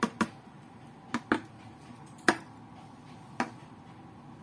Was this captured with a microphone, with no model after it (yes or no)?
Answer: yes